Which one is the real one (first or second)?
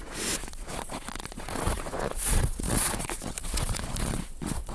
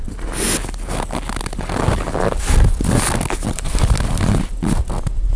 second